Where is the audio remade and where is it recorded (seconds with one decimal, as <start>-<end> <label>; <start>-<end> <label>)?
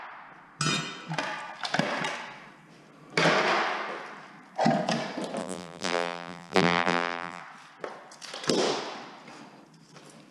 0.0-5.4 recorded; 5.4-7.4 remade; 7.4-10.3 recorded